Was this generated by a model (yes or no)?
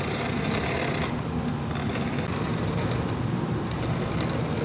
no